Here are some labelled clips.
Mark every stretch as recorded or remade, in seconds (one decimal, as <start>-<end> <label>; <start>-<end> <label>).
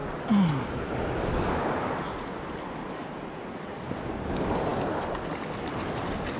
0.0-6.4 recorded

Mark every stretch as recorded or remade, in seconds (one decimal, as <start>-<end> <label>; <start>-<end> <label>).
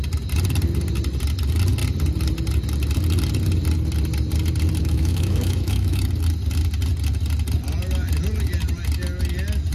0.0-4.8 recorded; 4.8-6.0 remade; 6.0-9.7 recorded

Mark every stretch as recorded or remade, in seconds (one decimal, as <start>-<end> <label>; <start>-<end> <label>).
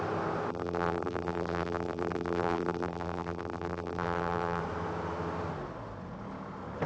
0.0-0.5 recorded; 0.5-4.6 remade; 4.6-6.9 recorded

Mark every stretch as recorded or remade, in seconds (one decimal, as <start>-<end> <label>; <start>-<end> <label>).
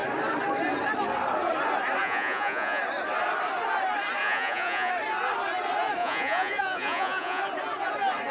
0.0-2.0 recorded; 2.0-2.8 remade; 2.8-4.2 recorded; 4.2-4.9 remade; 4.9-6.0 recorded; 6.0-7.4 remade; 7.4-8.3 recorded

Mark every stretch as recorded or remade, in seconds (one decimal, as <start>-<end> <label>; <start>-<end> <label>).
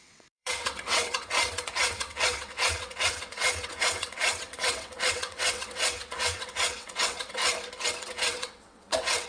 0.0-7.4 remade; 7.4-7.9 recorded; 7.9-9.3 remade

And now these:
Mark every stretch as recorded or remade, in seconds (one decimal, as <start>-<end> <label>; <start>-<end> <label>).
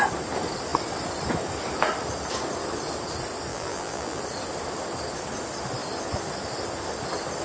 0.0-3.5 recorded; 3.5-4.2 remade; 4.2-7.4 recorded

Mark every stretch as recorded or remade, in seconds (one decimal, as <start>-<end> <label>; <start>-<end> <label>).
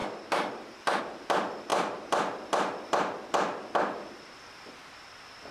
0.0-1.0 remade; 1.0-1.7 recorded; 1.7-5.0 remade; 5.0-5.5 recorded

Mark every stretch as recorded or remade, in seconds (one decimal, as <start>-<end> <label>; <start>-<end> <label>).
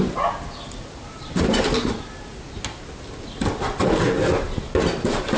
0.0-5.4 recorded